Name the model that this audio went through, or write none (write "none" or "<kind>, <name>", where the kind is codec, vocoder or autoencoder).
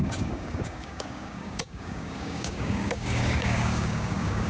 codec, DAC